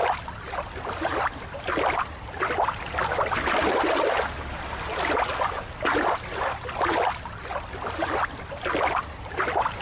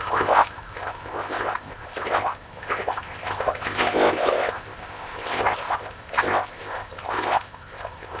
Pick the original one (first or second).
first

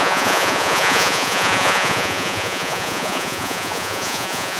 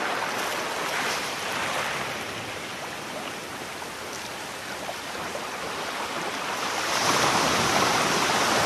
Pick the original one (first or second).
second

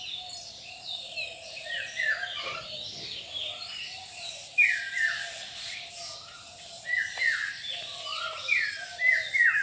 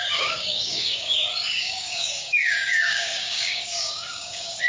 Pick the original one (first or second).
first